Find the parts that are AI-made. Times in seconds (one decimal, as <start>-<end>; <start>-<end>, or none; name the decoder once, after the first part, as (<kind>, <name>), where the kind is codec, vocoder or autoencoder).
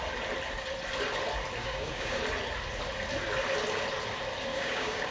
1.6-2.2 (codec, DAC); 4.5-5.1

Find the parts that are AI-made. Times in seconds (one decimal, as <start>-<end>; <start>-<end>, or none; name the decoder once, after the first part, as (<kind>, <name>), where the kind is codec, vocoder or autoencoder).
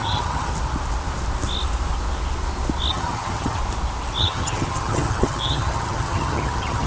0.0-0.5 (vocoder, HiFi-GAN); 2.9-3.6; 4.2-6.9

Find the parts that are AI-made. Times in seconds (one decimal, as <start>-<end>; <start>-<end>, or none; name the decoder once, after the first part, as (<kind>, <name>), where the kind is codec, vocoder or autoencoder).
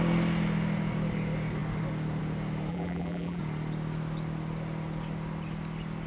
2.7-3.4 (vocoder, BigVGAN v2)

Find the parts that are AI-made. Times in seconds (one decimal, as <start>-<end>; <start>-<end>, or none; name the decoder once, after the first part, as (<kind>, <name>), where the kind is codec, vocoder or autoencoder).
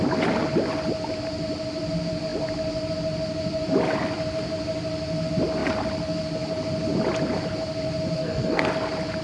8.2-8.7 (codec, SNAC)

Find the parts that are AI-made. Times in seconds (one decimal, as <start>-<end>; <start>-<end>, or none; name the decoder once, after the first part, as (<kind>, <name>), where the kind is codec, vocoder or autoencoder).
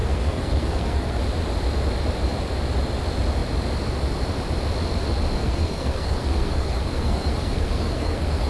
0.0-1.2 (codec, SNAC); 5.4-8.5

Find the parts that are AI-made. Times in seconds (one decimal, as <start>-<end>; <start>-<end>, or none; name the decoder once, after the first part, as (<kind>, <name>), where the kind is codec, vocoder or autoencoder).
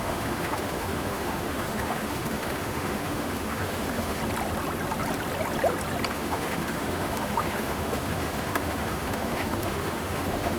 0.0-4.2 (autoencoder, DAC-VAE); 6.1-10.6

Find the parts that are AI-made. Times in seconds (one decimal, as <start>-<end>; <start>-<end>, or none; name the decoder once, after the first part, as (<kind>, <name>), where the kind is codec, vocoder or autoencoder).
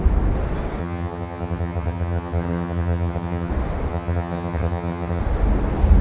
0.8-3.5 (vocoder, HiFi-GAN); 3.9-5.2